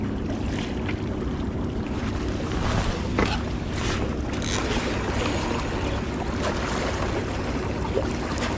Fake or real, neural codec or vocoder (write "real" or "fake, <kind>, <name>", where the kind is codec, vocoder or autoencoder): real